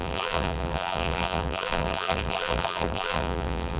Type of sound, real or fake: fake